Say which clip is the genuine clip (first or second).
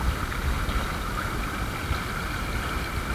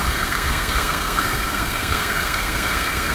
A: first